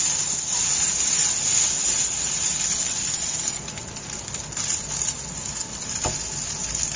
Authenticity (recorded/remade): recorded